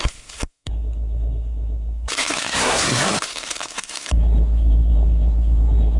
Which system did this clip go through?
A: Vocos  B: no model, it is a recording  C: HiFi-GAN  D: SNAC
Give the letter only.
D